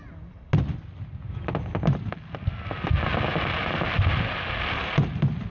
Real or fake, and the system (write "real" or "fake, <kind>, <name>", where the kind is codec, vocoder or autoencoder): real